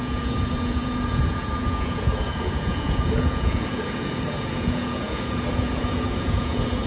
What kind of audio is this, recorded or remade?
remade